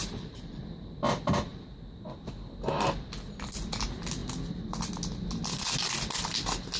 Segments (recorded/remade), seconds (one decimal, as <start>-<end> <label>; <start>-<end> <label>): 0.0-0.6 remade; 0.6-6.8 recorded